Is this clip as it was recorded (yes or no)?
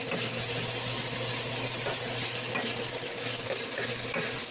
yes